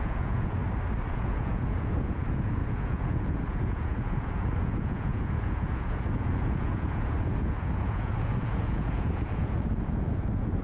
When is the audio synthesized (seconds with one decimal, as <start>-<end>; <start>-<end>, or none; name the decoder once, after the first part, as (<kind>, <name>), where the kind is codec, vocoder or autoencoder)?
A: 0.0-0.6 (vocoder, Vocos); 1.1-10.6